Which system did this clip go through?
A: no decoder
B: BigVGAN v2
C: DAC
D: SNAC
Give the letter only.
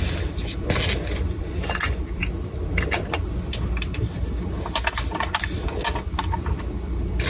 A